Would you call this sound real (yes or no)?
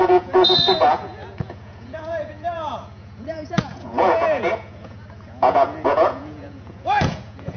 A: no